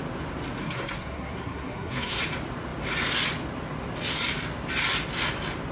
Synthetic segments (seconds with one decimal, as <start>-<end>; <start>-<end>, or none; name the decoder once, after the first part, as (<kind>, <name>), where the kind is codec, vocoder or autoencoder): 0.6-2.2 (codec, SNAC)